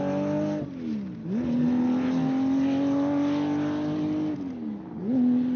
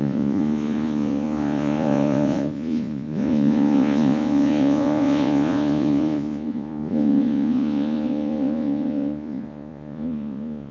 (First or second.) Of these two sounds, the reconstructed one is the second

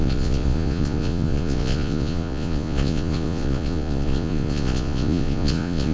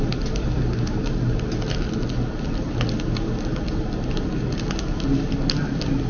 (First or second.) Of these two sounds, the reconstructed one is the first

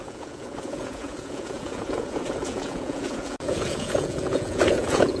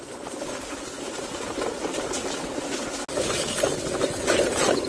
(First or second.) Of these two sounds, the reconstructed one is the first